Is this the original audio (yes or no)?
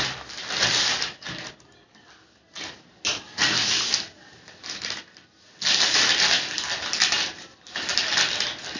yes